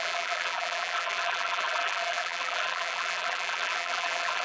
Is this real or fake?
fake